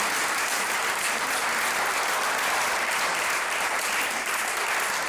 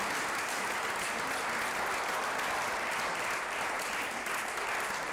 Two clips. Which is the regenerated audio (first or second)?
first